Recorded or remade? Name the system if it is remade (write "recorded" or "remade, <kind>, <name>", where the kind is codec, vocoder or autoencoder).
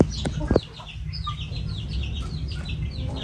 recorded